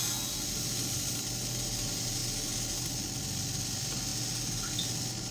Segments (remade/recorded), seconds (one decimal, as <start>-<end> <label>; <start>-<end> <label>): 0.0-5.3 recorded